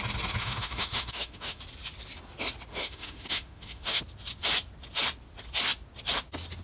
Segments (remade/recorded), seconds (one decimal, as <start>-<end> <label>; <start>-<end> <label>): 0.0-0.4 recorded; 0.4-1.6 remade; 1.6-2.7 recorded; 2.7-4.0 remade; 4.0-6.6 recorded